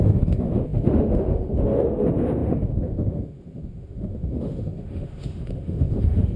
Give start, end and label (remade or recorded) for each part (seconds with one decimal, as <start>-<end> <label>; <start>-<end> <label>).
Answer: 0.0-6.4 remade